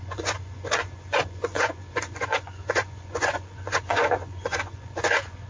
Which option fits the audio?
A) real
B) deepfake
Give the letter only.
B